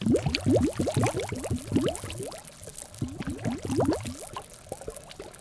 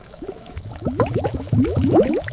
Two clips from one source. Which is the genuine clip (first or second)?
first